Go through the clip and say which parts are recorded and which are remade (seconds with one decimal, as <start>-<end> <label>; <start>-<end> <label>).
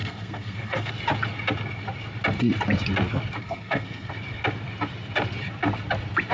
0.0-0.9 remade; 0.9-3.4 recorded; 3.4-4.1 remade; 4.1-6.3 recorded